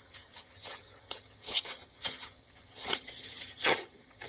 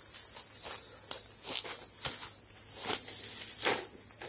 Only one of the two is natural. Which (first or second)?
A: second